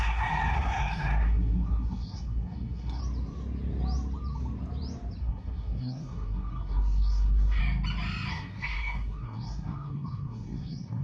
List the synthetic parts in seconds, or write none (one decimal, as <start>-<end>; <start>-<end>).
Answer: 0.0-3.0; 5.2-7.6; 8.3-11.0